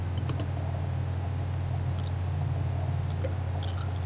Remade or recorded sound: recorded